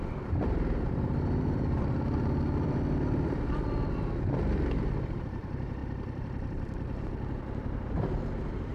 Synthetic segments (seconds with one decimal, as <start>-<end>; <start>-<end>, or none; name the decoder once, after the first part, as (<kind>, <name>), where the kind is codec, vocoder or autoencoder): 0.0-8.7 (vocoder, BigVGAN v2)